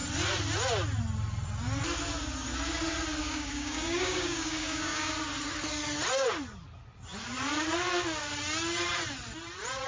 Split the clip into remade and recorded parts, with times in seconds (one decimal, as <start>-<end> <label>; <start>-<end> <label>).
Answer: 0.0-3.2 recorded; 3.2-5.1 remade; 5.1-9.9 recorded